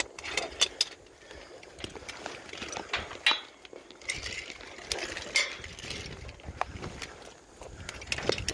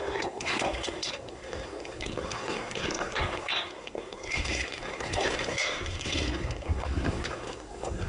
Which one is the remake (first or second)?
second